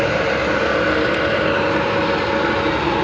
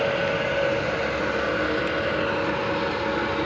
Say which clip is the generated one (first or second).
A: first